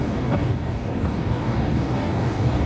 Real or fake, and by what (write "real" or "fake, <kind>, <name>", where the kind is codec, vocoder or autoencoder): fake, codec, DAC